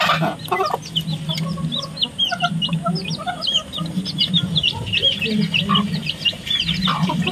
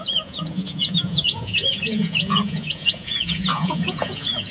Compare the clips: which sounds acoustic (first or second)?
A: first